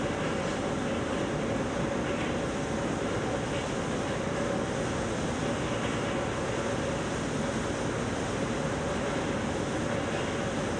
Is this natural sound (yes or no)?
yes